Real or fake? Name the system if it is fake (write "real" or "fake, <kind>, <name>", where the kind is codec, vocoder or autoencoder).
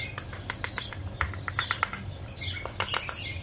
real